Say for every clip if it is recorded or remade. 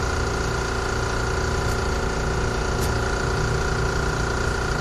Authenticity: recorded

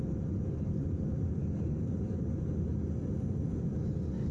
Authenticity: recorded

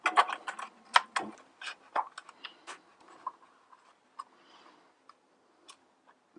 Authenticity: recorded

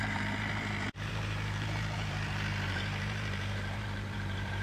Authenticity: remade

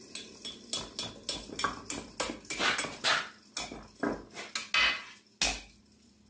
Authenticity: recorded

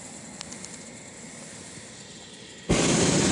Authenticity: recorded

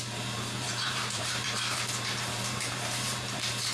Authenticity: remade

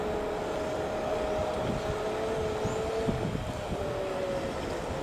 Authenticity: recorded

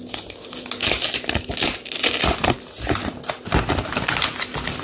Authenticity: recorded